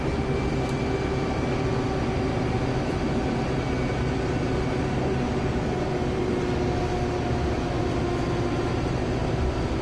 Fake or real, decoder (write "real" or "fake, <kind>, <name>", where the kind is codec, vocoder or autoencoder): real